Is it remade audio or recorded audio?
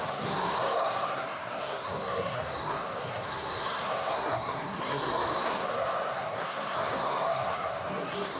remade